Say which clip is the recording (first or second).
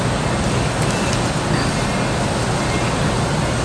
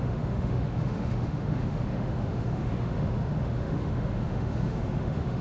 first